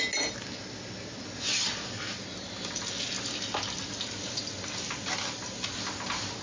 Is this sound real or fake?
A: real